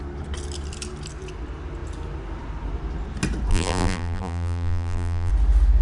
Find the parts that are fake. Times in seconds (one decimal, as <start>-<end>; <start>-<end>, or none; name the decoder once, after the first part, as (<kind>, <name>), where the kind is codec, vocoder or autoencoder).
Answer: 3.5-5.3 (vocoder, BigVGAN v2)